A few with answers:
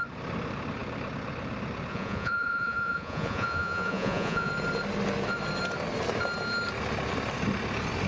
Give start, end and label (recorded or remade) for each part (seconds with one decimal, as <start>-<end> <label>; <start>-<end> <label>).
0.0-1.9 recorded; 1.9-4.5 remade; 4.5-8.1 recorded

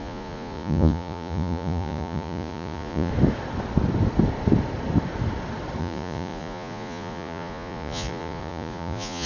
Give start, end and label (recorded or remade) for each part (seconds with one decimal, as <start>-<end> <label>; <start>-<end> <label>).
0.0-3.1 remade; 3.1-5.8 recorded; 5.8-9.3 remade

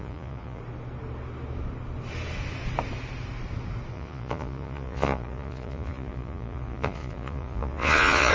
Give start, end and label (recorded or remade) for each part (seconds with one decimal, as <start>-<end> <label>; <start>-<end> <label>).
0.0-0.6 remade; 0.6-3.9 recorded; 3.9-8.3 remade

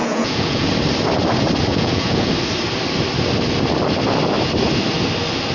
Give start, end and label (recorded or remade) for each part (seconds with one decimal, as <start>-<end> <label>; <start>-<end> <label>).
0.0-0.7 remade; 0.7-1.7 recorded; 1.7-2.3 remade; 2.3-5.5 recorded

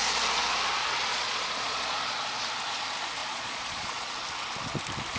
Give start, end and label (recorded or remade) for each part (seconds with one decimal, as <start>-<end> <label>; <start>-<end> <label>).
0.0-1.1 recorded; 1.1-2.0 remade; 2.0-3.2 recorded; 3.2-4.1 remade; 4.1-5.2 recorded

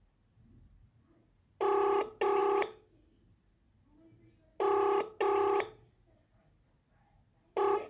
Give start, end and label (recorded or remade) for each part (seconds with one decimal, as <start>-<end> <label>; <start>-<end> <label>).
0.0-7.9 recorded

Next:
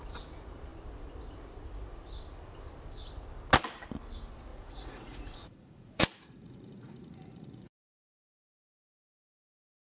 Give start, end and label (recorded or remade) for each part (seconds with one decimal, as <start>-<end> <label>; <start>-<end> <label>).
0.0-4.5 recorded; 4.5-8.9 remade; 8.9-9.8 recorded

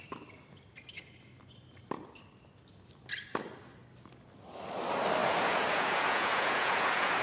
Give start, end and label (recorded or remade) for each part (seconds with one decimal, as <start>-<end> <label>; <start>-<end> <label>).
0.0-5.2 recorded; 5.2-7.2 remade